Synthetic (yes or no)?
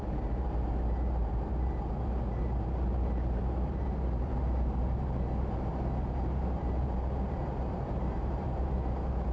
yes